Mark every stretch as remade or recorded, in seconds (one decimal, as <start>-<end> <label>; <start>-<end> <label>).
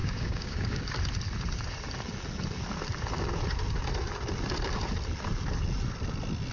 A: 0.0-0.8 remade; 0.8-6.5 recorded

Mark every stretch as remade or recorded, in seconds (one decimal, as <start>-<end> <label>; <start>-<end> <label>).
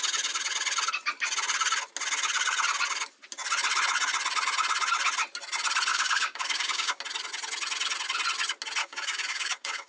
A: 0.0-5.9 recorded; 5.9-7.0 remade; 7.0-8.8 recorded; 8.8-9.9 remade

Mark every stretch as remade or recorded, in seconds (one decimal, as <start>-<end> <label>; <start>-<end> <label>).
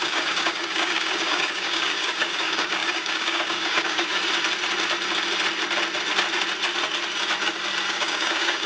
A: 0.0-4.2 remade; 4.2-7.9 recorded; 7.9-8.7 remade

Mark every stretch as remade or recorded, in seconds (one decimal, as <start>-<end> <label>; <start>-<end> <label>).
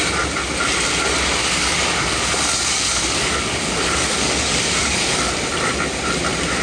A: 0.0-1.4 recorded; 1.4-5.3 remade; 5.3-6.6 recorded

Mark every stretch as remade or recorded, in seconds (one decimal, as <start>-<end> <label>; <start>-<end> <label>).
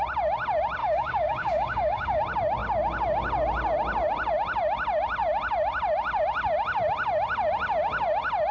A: 0.0-0.8 recorded; 0.8-2.2 remade; 2.2-8.5 recorded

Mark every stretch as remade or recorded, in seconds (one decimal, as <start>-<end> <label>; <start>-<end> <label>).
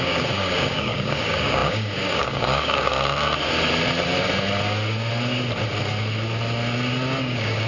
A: 0.0-2.9 remade; 2.9-7.2 recorded; 7.2-7.7 remade